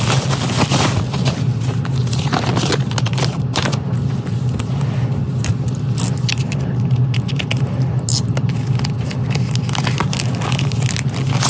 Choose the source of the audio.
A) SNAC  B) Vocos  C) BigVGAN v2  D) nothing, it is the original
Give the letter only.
D